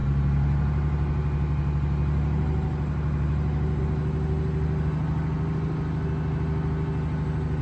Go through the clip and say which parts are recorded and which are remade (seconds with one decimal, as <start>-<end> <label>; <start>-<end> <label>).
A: 0.0-7.6 recorded